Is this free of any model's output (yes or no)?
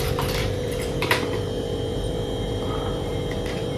no